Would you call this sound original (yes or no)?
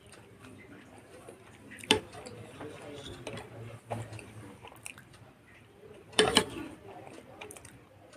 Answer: no